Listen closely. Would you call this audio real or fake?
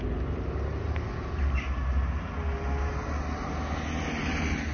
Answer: real